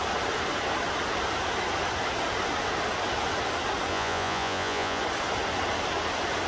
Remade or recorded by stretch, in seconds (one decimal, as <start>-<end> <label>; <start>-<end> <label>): 0.0-3.9 recorded; 3.9-5.0 remade; 5.0-6.5 recorded